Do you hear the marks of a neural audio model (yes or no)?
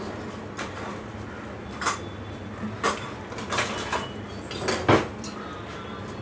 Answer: no